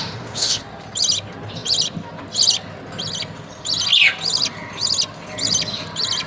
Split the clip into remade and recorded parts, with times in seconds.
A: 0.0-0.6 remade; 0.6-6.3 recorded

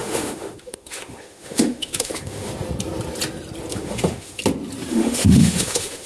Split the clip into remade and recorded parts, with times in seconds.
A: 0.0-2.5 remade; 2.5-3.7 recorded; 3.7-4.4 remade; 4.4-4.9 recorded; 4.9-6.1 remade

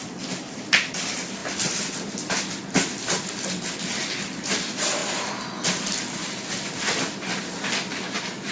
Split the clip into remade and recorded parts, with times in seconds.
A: 0.0-8.5 recorded

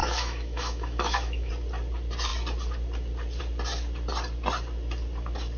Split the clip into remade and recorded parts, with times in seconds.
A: 0.0-1.5 remade; 1.5-5.6 recorded